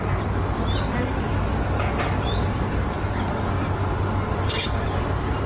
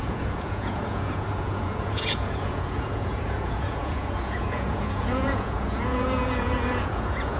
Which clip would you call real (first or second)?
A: first